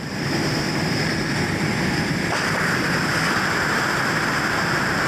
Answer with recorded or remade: remade